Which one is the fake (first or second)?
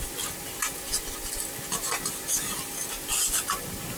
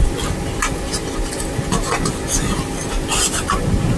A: first